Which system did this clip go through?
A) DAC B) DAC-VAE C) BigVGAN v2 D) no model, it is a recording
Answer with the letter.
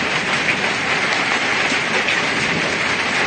D